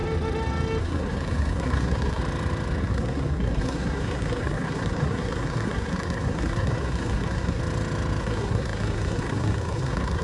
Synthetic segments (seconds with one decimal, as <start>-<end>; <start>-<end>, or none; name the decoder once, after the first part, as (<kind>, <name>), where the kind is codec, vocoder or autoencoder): 0.8-2.2 (codec, SNAC); 2.8-7.6; 8.2-10.2